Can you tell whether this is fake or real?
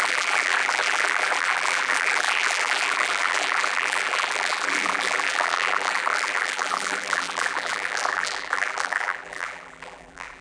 fake